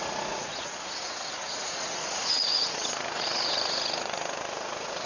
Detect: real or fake fake